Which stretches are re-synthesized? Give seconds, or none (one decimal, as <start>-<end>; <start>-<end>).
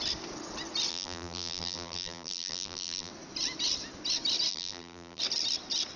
0.9-3.1; 4.5-5.2